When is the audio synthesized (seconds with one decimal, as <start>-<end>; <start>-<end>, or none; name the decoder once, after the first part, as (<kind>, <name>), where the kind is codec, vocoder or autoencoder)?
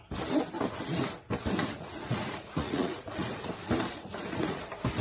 1.6-3.5 (vocoder, Vocos); 3.9-4.6